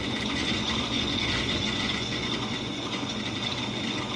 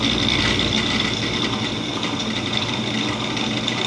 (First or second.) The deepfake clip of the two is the first